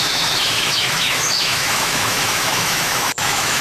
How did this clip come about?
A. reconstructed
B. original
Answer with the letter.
A